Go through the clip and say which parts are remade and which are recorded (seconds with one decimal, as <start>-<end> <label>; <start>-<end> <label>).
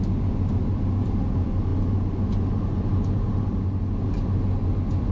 0.0-5.1 recorded